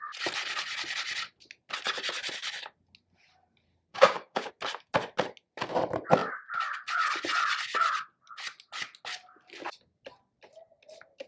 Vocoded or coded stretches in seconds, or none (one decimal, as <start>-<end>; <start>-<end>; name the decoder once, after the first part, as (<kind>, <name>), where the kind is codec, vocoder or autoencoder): 3.9-4.5 (codec, DAC)